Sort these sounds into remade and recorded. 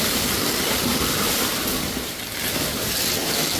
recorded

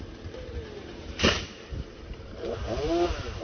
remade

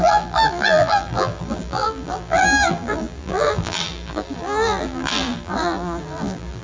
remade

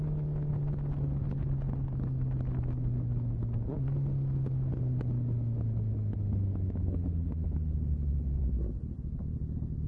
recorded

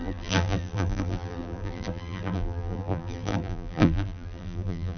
remade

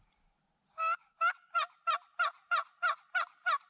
recorded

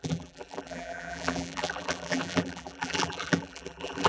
remade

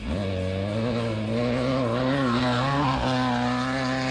recorded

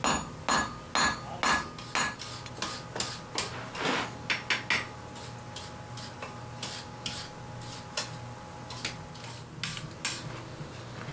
recorded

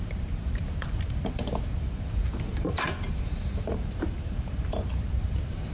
remade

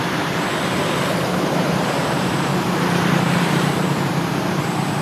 remade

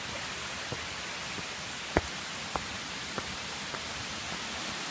recorded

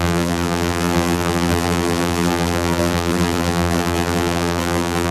remade